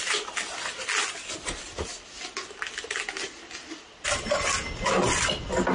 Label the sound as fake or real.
real